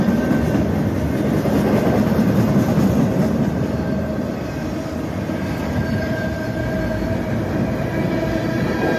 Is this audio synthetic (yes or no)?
no